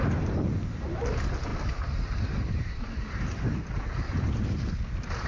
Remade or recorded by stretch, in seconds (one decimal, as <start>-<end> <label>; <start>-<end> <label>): 0.0-5.3 recorded